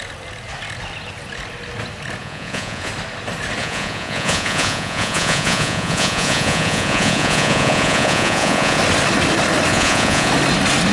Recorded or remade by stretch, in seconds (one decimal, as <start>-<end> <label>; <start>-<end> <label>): 0.0-2.2 recorded; 2.2-2.9 remade; 2.9-3.6 recorded; 3.6-8.8 remade; 8.8-9.7 recorded; 9.7-10.3 remade; 10.3-10.9 recorded